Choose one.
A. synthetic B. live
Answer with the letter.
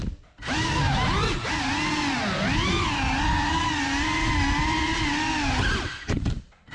B